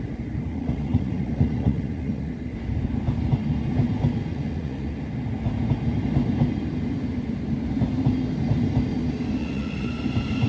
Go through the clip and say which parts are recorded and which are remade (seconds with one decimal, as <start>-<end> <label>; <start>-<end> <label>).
0.0-0.5 recorded; 0.5-2.3 remade; 2.3-4.3 recorded; 4.3-5.0 remade; 5.0-9.4 recorded; 9.4-9.9 remade; 9.9-10.5 recorded